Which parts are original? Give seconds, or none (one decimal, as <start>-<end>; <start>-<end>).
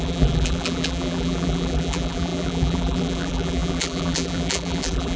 none